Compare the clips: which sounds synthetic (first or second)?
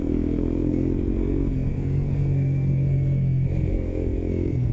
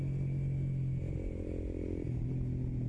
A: first